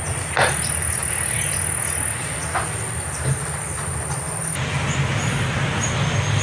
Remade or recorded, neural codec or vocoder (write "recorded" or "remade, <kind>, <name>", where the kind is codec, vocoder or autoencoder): recorded